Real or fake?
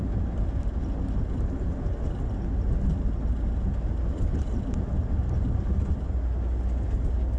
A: real